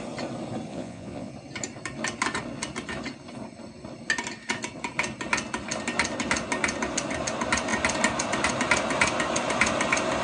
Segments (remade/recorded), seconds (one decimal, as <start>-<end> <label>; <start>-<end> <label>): 0.0-0.7 recorded; 0.7-1.3 remade; 1.3-10.2 recorded